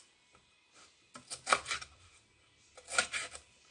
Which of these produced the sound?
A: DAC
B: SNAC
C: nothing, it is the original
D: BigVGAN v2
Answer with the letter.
C